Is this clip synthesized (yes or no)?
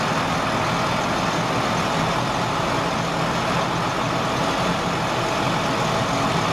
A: no